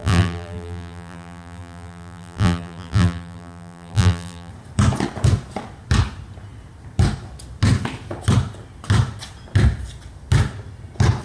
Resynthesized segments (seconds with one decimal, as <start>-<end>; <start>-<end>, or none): 0.0-4.5